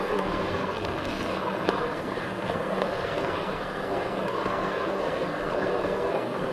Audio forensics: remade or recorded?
remade